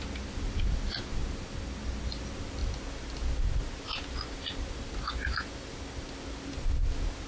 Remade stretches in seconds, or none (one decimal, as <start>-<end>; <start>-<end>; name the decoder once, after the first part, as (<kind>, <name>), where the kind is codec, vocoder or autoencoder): none